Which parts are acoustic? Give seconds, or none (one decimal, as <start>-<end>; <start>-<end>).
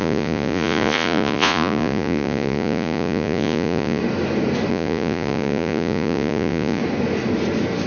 4.0-4.7; 6.8-7.9